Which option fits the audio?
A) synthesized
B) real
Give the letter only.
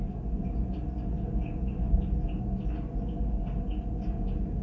B